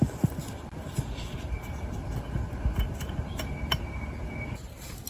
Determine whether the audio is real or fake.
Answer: real